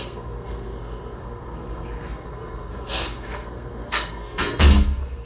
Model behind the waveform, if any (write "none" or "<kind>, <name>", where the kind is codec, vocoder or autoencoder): codec, SNAC